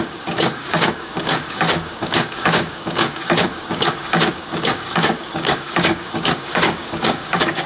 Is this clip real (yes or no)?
no